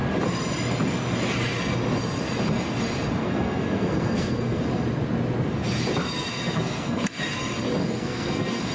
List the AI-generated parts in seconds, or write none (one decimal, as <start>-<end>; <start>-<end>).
3.2-4.6; 6.3-7.2; 7.8-8.7